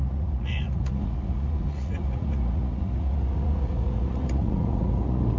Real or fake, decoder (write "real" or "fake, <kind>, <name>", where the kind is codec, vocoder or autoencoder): fake, vocoder, Vocos